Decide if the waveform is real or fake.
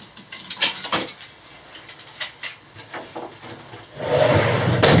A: real